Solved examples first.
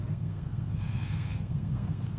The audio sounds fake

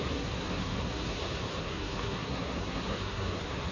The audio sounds fake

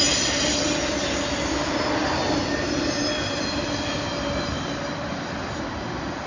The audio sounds real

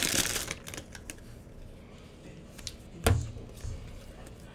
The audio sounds real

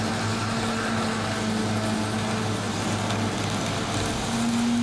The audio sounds real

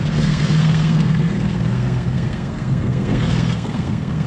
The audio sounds fake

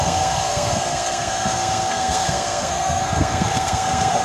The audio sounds fake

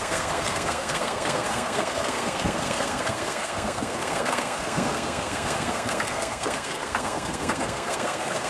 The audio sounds fake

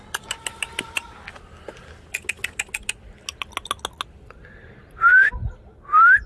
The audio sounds real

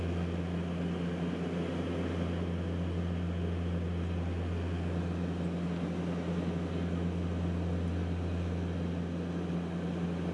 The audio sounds real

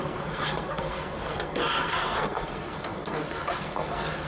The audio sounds fake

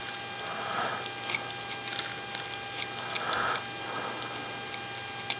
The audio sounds real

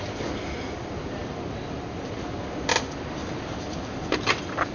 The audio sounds real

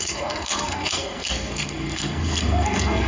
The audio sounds fake